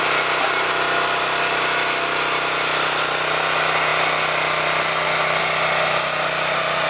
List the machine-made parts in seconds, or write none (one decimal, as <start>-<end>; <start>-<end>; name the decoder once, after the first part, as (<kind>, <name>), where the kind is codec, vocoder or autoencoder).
none